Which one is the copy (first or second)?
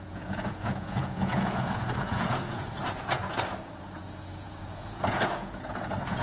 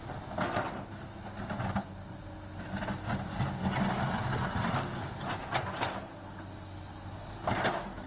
first